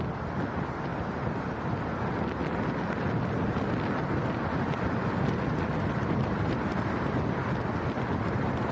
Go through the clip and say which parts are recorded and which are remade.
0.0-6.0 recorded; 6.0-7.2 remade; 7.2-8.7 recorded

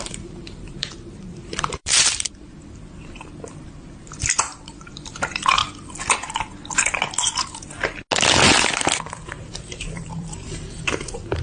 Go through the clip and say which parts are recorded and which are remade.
0.0-5.6 remade; 5.6-9.1 recorded; 9.1-11.4 remade

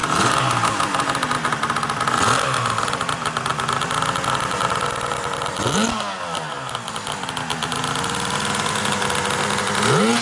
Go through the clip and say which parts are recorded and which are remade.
0.0-0.8 remade; 0.8-10.2 recorded

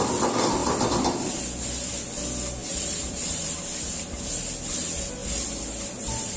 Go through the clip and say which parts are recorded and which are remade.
0.0-0.6 recorded; 0.6-1.4 remade; 1.4-2.6 recorded; 2.6-3.5 remade; 3.5-5.2 recorded; 5.2-6.4 remade

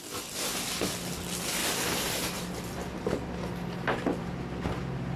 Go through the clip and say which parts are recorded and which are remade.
0.0-1.6 remade; 1.6-2.4 recorded; 2.4-5.2 remade

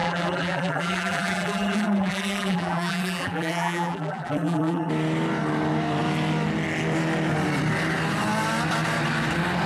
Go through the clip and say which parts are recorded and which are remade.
0.0-4.9 remade; 4.9-9.7 recorded